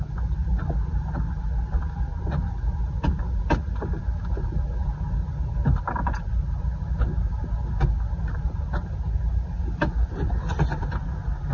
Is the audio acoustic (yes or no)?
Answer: yes